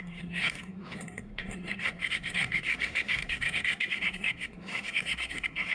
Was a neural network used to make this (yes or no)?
yes